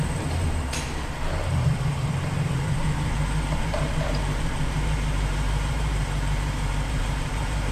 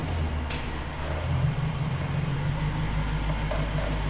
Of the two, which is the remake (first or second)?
first